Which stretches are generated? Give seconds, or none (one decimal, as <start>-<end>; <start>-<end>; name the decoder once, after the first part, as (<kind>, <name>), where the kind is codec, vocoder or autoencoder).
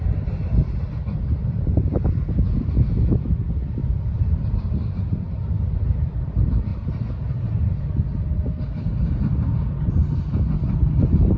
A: 3.8-5.0 (vocoder, BigVGAN v2); 6.7-8.2